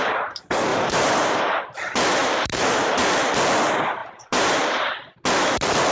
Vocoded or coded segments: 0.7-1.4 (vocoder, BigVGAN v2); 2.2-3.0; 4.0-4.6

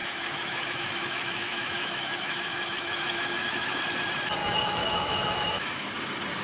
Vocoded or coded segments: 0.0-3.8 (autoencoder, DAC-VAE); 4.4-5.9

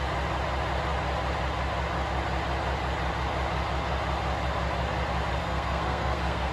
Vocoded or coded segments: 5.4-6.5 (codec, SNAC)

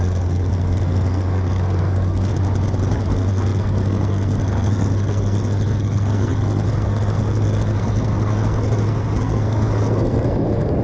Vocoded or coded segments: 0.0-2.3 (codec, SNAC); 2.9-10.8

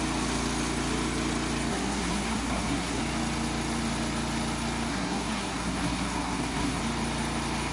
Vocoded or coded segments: 1.7-3.0 (codec, SNAC); 4.9-6.8

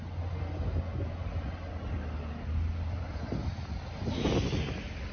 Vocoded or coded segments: none